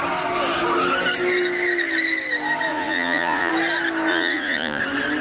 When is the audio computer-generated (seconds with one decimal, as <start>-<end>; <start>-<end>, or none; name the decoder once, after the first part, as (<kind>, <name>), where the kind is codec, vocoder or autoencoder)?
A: 2.7-3.5 (vocoder, Vocos); 4.1-4.8